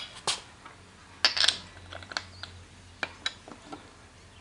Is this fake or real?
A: real